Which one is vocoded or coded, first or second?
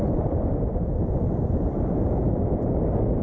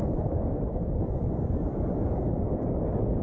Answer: second